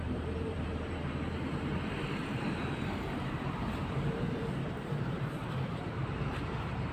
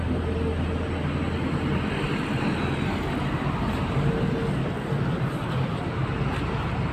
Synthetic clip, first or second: first